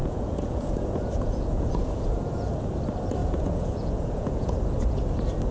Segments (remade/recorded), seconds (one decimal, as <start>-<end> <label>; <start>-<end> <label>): 0.0-2.5 remade; 2.5-3.2 recorded; 3.2-4.5 remade; 4.5-5.5 recorded